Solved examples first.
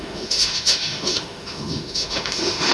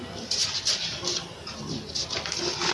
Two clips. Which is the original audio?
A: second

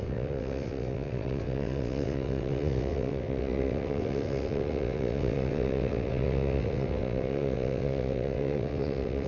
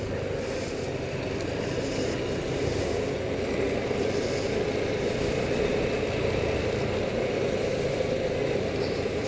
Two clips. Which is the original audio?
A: second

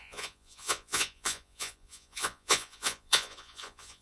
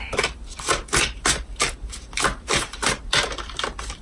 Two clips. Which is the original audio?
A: second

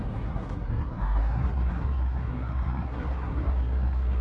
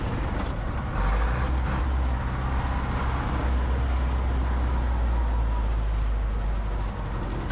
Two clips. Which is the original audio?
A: second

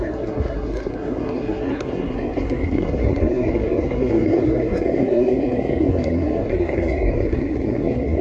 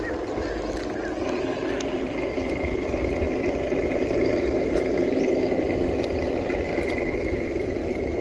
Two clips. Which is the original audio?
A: second